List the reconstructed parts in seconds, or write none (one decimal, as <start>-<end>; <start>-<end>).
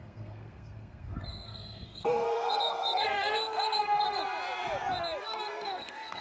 0.0-4.2; 5.2-6.2